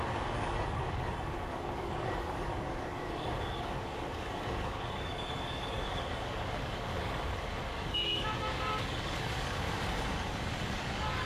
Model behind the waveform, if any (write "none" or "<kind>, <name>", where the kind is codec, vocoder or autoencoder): codec, DAC